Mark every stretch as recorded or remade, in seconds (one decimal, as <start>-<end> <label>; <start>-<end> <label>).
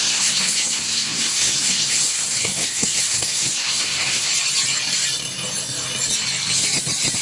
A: 0.0-4.3 remade; 4.3-7.2 recorded